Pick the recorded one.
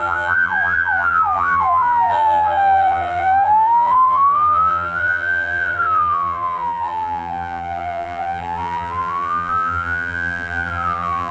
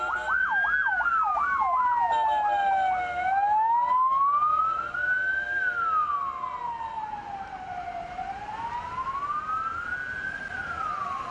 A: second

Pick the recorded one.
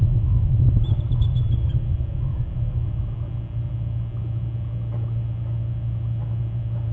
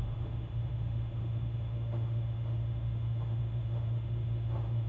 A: first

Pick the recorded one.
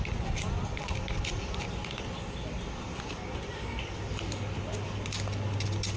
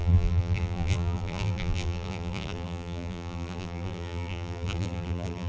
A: first